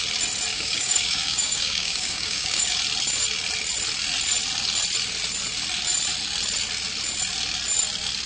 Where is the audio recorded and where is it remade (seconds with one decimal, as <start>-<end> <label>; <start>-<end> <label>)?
0.0-0.5 recorded; 0.5-2.8 remade; 2.8-8.3 recorded